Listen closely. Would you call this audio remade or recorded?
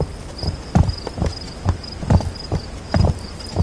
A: recorded